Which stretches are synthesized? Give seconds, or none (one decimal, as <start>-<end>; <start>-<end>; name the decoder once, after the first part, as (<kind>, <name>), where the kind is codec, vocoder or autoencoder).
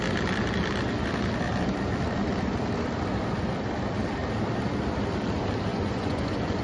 5.7-6.6 (vocoder, Vocos)